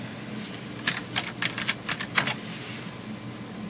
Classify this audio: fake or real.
real